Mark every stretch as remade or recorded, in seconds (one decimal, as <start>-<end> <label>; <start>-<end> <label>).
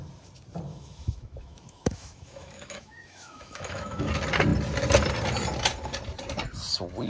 0.0-0.7 recorded; 0.7-4.1 remade; 4.1-7.1 recorded